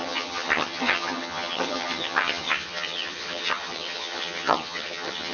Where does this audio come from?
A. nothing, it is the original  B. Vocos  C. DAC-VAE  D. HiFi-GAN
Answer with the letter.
D